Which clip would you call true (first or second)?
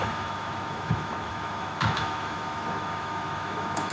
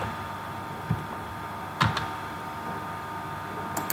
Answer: second